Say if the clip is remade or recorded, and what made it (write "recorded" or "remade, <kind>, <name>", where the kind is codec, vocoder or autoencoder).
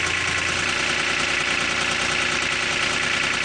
recorded